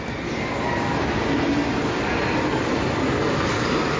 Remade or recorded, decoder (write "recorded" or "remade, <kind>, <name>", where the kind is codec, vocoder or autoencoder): recorded